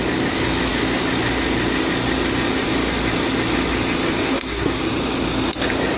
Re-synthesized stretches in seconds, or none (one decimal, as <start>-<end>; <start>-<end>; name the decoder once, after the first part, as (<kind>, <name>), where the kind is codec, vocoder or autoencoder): 4.2-4.8 (codec, SNAC)